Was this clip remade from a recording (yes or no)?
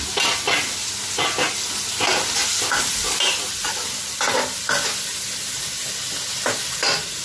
no